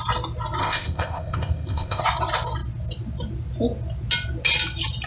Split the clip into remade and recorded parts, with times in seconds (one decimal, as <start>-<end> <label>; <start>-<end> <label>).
0.0-0.6 recorded; 0.6-2.0 remade; 2.0-5.1 recorded